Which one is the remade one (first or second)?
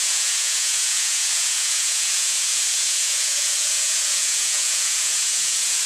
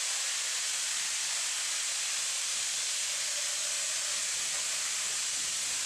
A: first